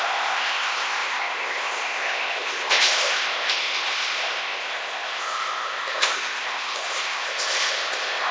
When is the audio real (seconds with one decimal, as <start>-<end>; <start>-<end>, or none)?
none